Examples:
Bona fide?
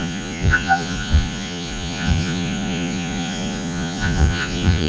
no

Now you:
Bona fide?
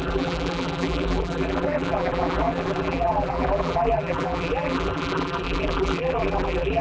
no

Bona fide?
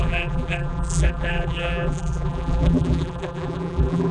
no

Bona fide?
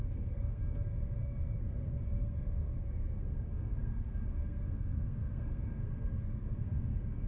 no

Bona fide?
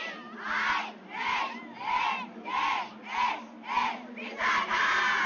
yes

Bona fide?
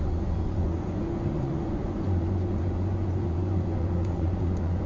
no